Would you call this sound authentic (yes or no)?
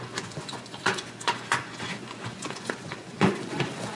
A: no